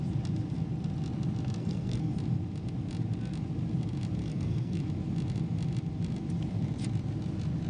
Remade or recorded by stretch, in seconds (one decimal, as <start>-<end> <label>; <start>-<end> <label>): 0.0-1.6 recorded; 1.6-2.1 remade; 2.1-4.2 recorded; 4.2-4.8 remade; 4.8-7.7 recorded